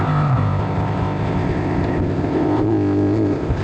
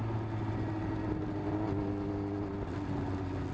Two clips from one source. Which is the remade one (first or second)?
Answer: first